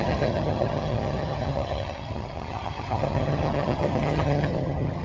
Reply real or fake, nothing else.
fake